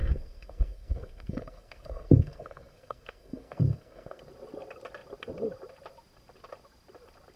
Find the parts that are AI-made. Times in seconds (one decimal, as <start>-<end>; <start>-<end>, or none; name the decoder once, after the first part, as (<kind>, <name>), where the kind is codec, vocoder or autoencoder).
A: 0.0-4.2 (codec, SNAC)